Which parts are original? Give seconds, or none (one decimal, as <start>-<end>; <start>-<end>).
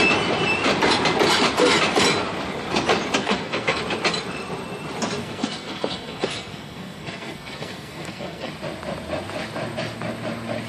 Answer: 0.0-3.2; 3.8-5.2; 8.5-10.7